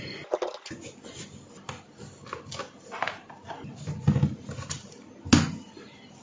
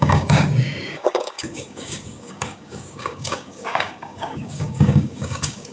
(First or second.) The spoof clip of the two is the second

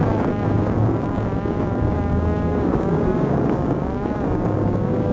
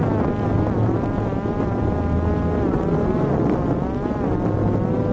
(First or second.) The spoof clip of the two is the first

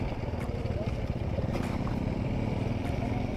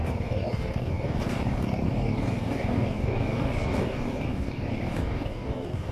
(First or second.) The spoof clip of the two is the second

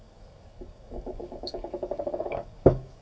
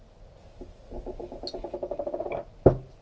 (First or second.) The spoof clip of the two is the first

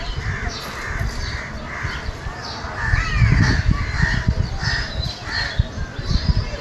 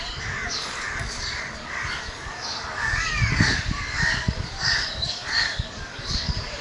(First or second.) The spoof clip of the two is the second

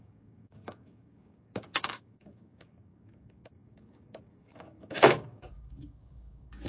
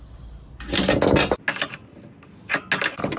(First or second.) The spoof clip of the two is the first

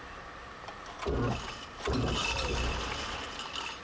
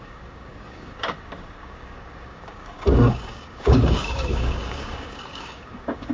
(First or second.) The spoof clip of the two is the second